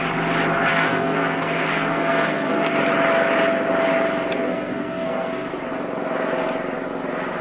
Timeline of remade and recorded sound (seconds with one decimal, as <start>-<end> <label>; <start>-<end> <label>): 0.0-0.7 recorded; 0.7-2.7 remade; 2.7-4.4 recorded; 4.4-5.5 remade; 5.5-7.4 recorded